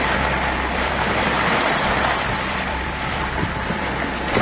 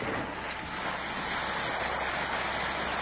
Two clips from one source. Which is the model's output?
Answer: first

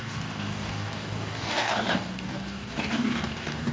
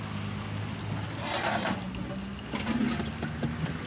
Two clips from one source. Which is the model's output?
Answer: first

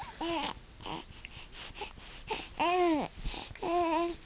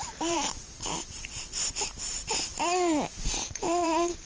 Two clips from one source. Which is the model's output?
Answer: second